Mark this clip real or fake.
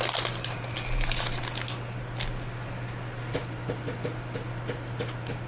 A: real